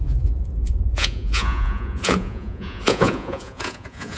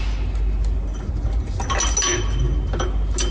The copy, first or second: first